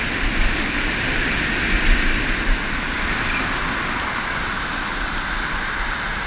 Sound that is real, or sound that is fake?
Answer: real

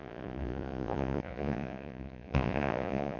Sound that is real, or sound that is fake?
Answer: fake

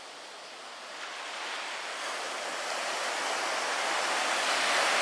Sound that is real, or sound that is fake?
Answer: real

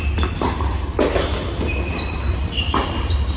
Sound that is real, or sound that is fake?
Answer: real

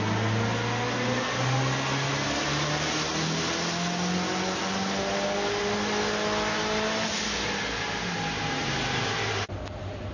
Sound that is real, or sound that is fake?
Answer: real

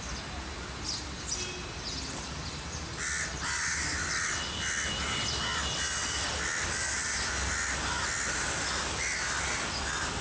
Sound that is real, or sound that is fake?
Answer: real